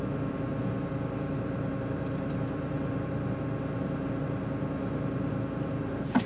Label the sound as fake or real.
real